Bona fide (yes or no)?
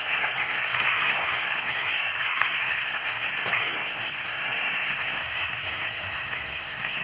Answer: no